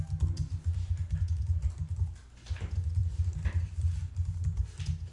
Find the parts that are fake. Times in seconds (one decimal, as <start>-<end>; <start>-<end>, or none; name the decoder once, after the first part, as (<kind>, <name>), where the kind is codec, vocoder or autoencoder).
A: none